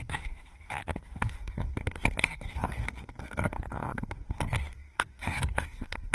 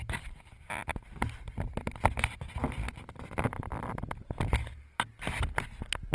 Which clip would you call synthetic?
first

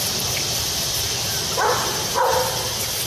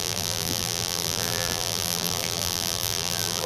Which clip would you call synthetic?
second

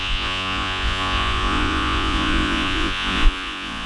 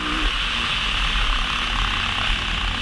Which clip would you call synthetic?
first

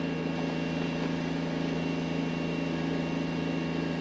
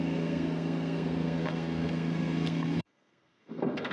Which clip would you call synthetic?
second